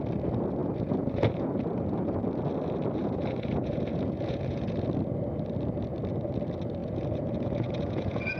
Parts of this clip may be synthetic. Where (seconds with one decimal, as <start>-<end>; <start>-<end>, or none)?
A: 0.6-2.2; 3.0-4.9; 6.8-8.4